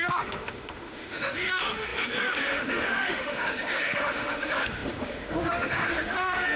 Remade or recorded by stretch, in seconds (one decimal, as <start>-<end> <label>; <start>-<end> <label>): 0.0-6.6 remade

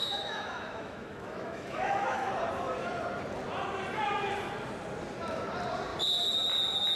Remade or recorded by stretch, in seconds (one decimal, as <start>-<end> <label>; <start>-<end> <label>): 0.0-2.3 remade; 2.3-7.0 recorded